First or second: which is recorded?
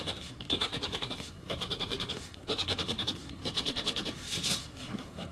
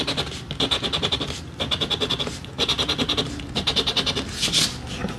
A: second